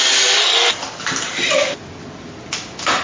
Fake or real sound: real